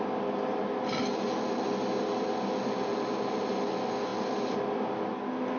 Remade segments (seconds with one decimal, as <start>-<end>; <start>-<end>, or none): none